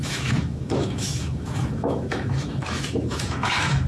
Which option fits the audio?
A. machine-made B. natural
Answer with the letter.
A